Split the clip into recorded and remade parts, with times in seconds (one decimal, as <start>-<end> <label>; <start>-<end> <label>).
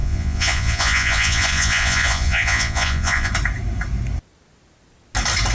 0.0-3.3 remade; 3.3-5.5 recorded